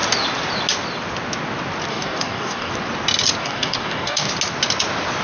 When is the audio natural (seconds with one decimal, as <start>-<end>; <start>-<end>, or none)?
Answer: 0.0-1.9; 2.7-3.4; 4.3-5.2